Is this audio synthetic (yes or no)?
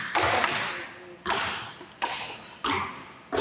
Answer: no